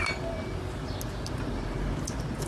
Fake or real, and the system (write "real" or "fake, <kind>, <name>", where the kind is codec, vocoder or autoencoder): real